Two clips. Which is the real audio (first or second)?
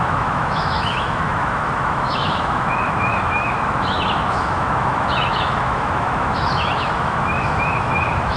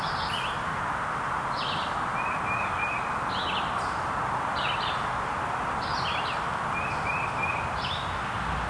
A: second